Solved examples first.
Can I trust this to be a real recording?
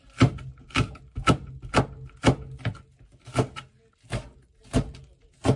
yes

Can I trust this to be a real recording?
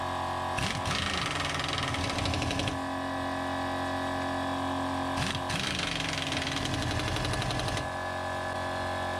yes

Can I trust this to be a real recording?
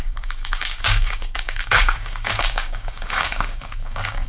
no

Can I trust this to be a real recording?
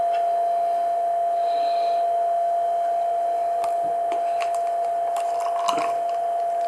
yes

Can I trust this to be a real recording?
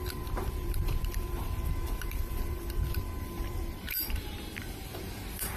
no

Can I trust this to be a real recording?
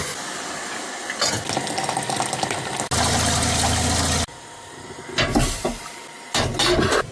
yes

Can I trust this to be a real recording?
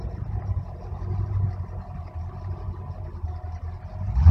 yes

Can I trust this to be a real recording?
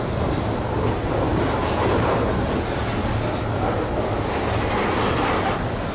yes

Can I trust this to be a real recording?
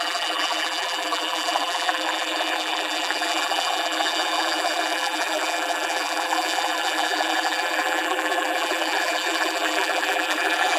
no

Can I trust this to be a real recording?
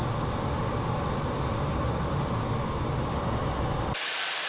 yes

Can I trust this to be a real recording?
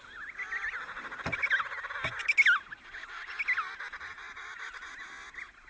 yes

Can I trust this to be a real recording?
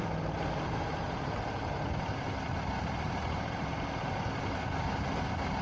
yes